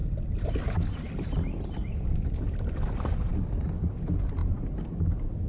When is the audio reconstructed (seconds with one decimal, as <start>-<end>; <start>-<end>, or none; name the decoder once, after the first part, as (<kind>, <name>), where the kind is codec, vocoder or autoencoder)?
none